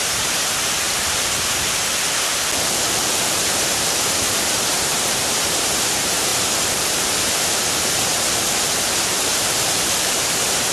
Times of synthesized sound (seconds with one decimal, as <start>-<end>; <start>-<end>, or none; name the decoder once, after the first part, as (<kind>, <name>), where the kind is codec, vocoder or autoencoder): 0.0-1.9 (vocoder, BigVGAN v2); 3.4-6.3; 6.9-8.1; 8.8-10.7